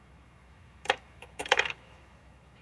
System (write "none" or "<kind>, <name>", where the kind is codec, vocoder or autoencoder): autoencoder, DAC-VAE